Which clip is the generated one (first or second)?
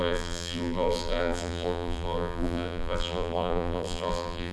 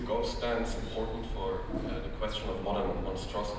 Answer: first